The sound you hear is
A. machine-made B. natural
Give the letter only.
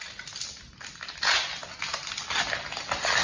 B